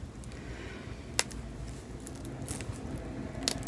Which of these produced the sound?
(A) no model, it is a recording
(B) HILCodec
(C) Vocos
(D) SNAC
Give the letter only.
A